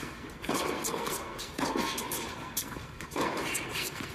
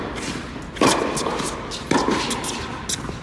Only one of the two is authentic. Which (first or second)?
second